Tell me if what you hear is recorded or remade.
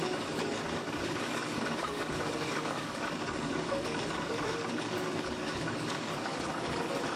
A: remade